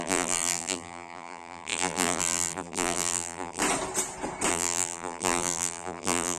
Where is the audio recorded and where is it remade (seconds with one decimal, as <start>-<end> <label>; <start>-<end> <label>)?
0.0-3.6 remade; 3.6-4.5 recorded; 4.5-6.4 remade